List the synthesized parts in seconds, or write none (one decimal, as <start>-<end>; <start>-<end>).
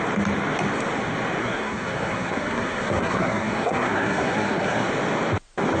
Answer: 1.4-4.9